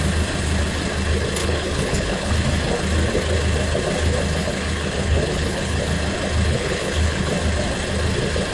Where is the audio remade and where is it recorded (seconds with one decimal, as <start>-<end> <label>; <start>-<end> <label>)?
0.0-1.4 recorded; 1.4-2.3 remade; 2.3-4.4 recorded; 4.4-5.8 remade; 5.8-6.5 recorded; 6.5-7.3 remade; 7.3-8.5 recorded